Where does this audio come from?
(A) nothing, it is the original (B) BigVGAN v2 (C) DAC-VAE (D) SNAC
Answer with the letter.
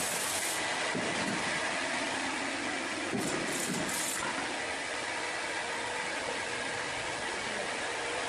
A